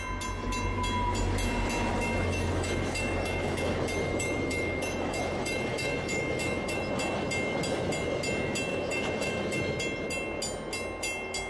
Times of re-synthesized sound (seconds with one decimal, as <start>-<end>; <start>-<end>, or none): 1.9-6.8; 8.7-9.6